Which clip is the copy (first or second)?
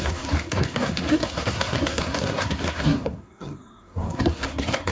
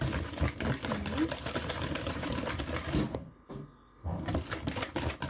first